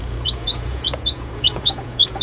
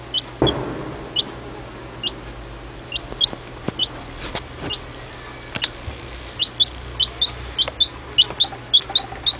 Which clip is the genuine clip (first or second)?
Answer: second